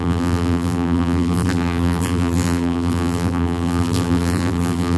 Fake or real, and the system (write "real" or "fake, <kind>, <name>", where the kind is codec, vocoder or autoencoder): fake, vocoder, BigVGAN v2